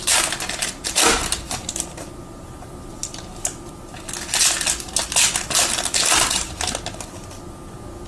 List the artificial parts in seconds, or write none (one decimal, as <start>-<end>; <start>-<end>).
none